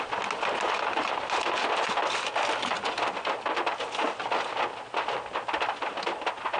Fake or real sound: real